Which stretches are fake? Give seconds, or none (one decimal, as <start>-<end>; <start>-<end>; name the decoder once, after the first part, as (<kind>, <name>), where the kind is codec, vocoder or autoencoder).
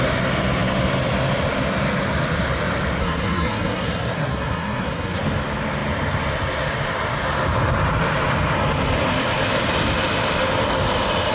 3.0-5.2 (codec, SNAC)